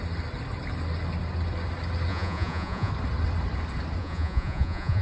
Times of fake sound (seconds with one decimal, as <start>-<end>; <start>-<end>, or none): 2.1-2.9; 4.0-5.0